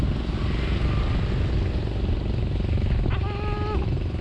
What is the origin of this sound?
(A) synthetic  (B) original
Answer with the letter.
B